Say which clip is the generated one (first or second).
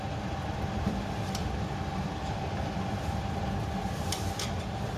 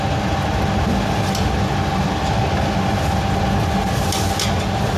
first